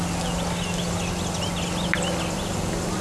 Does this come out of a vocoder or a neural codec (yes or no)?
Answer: no